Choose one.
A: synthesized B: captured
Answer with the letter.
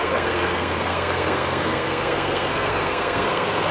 A